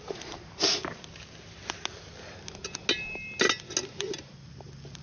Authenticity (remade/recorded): recorded